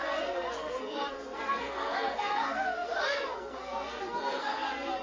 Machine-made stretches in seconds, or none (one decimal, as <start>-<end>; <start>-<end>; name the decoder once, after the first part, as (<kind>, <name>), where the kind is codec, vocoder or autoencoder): 0.0-5.0 (codec, SNAC)